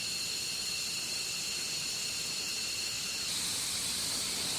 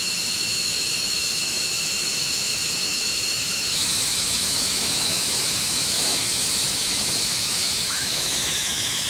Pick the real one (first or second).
first